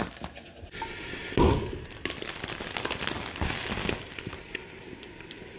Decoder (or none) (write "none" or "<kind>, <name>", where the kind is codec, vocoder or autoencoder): none